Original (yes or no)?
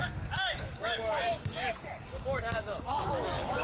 no